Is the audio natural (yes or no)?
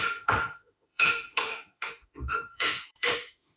no